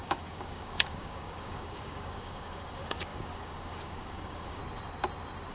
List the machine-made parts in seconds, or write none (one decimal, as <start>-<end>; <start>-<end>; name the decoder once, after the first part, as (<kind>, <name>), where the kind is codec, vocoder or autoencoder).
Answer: 0.0-4.6 (codec, DAC)